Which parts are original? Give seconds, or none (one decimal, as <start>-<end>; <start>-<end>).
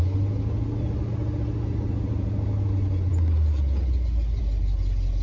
0.0-5.2